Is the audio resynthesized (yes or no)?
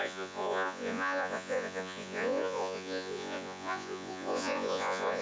yes